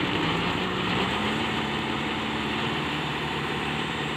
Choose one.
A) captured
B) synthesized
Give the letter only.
B